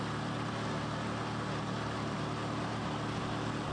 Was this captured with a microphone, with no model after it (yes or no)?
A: yes